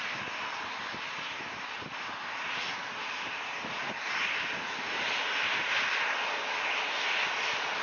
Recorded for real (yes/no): yes